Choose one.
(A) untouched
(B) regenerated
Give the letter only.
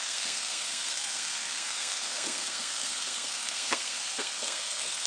B